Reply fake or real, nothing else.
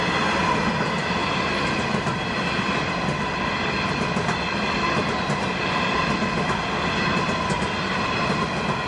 real